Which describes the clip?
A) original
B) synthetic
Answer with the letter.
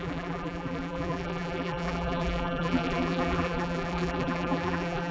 B